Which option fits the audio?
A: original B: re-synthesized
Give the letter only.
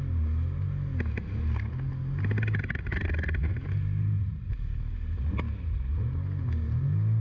A